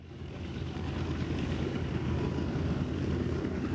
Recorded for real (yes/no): no